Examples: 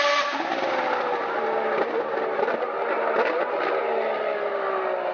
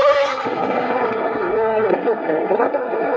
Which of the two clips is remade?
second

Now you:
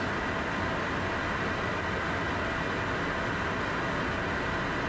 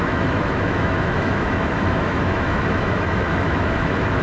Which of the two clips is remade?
second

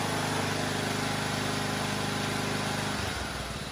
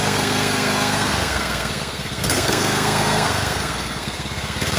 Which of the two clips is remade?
second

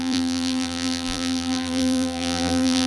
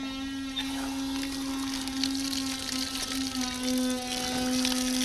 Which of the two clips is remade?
first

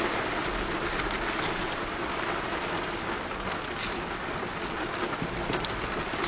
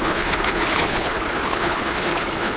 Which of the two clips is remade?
second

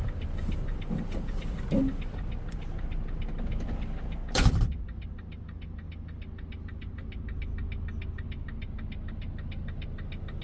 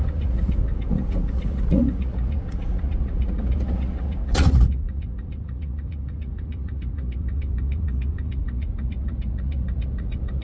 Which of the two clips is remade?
second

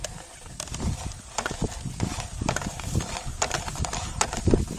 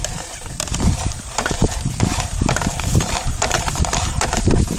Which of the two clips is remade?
second